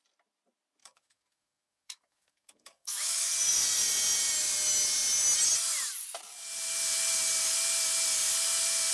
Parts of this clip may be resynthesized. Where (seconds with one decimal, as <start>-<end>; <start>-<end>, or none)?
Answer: 0.8-3.3